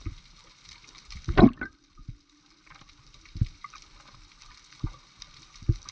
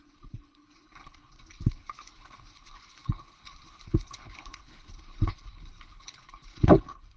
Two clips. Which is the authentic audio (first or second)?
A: first